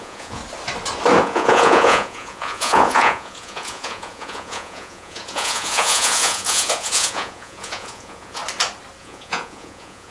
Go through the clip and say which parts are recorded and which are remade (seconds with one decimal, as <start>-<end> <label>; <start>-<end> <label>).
0.0-0.4 remade; 0.4-1.2 recorded; 1.2-8.4 remade; 8.4-9.0 recorded; 9.0-10.1 remade